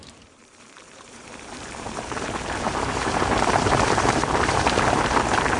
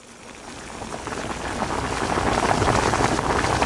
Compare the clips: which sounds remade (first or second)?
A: first